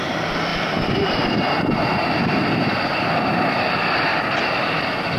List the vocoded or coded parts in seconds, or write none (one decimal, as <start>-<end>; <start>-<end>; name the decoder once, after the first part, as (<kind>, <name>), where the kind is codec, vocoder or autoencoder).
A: 0.0-5.2 (vocoder, BigVGAN v2)